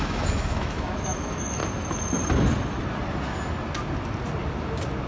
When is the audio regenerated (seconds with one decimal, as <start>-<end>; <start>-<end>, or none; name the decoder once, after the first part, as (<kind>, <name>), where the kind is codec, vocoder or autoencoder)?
0.0-1.6 (autoencoder, DAC-VAE)